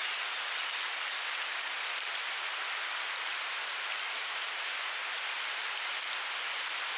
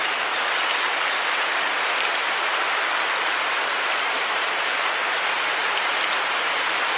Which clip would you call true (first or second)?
first